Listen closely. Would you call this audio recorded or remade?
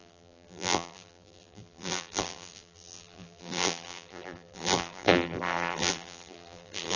remade